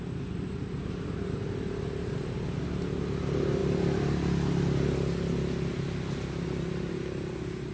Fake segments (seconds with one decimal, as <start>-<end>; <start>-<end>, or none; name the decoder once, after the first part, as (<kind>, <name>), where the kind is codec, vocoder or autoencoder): none